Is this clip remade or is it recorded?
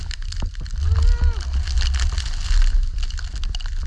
recorded